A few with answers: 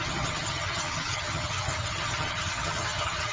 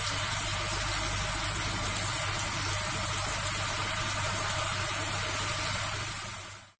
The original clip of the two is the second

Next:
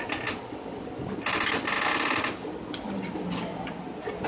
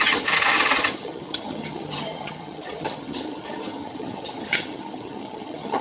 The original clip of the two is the first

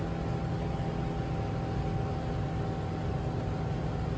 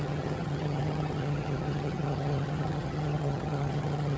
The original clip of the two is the first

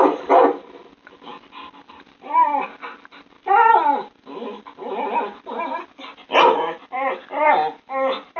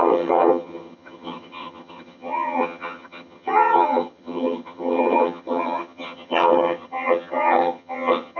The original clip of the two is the first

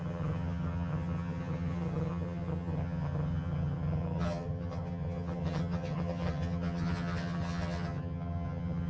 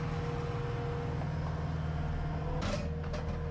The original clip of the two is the second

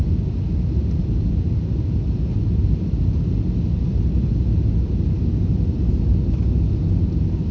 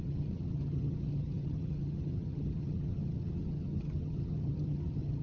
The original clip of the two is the first